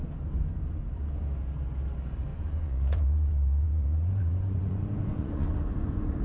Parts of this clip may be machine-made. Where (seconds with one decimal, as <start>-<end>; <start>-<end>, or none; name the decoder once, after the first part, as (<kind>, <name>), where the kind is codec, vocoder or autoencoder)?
2.3-6.2 (vocoder, Vocos)